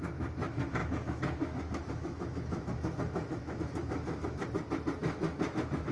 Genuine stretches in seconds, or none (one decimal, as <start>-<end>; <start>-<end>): 4.4-5.0